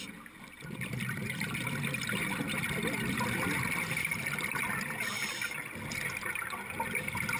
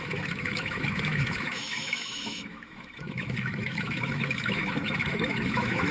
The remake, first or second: second